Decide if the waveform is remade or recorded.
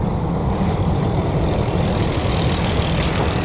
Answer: recorded